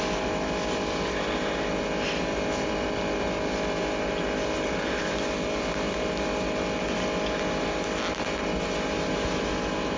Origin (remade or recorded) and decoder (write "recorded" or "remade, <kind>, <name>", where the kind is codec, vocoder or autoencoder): recorded